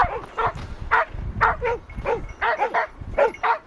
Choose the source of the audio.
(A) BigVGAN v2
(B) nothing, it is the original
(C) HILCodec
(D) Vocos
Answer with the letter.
B